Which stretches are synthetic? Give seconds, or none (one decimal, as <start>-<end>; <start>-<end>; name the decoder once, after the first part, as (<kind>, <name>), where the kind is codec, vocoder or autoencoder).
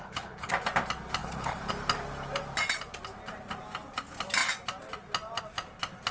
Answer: 0.0-0.5 (codec, HILCodec); 1.2-1.7